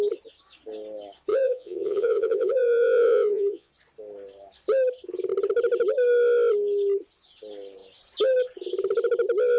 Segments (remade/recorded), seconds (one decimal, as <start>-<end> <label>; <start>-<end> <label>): 0.0-1.3 recorded; 1.3-3.7 remade; 3.7-9.6 recorded